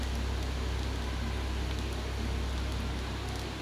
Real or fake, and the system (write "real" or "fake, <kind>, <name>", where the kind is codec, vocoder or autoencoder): real